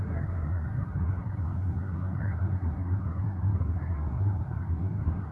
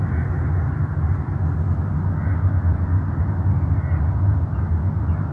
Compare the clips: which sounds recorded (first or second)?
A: second